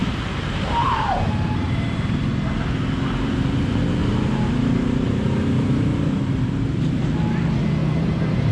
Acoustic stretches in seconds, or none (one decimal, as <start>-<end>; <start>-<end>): 2.2-4.0; 6.4-7.8